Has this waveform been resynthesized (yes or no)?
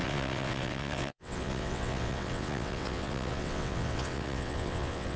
yes